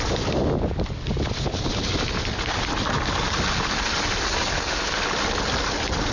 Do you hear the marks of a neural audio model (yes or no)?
no